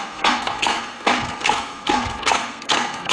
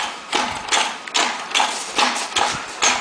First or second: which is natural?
second